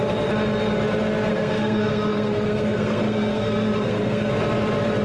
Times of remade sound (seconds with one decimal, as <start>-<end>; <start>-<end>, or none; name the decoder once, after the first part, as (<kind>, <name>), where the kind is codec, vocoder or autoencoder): 1.3-4.3 (codec, SNAC)

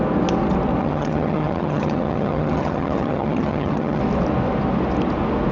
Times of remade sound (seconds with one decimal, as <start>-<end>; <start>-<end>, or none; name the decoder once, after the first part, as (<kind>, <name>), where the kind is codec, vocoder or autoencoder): 0.8-4.0 (vocoder, HiFi-GAN)

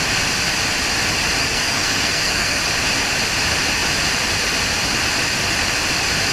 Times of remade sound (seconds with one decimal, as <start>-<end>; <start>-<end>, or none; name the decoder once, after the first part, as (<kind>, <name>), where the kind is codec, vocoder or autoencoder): 1.4-2.6 (codec, SNAC)

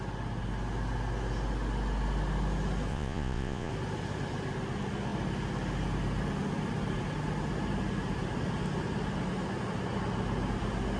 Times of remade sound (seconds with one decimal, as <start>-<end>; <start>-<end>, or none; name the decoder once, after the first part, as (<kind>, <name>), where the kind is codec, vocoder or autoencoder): 2.9-3.7 (vocoder, Vocos)